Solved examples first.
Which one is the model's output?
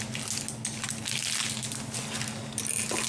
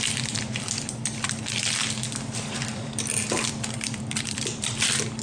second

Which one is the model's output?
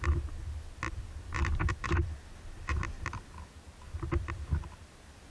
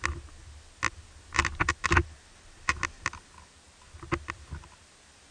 first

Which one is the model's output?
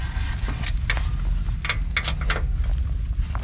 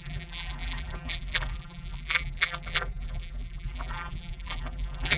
second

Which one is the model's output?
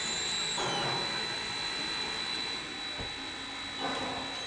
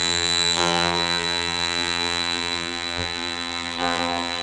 second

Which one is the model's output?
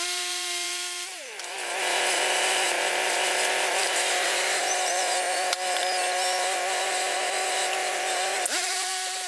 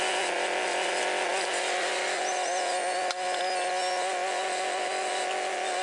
first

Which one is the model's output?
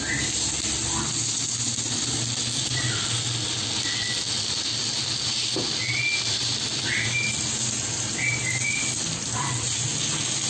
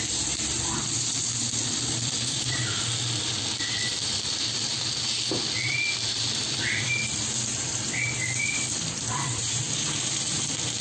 second